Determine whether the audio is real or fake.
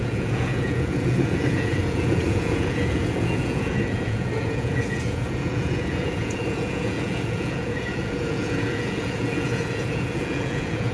fake